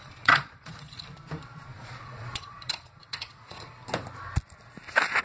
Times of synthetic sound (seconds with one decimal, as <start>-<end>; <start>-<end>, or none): 0.0-1.0; 1.7-3.7